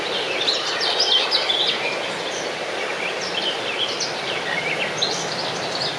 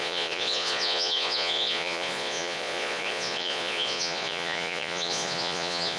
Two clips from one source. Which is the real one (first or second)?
first